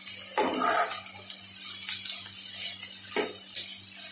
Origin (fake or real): real